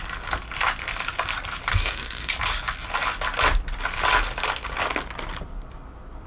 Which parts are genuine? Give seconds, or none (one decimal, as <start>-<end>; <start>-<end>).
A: 0.0-1.7; 2.3-6.3